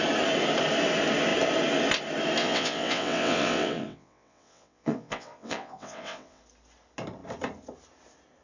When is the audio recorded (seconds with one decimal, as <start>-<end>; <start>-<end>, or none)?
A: 0.0-2.4; 6.4-8.4